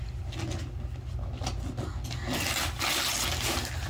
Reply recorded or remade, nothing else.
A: recorded